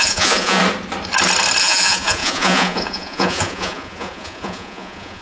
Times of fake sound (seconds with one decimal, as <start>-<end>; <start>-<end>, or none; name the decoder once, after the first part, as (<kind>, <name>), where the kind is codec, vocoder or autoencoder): 0.0-0.6 (vocoder, Vocos); 1.6-5.2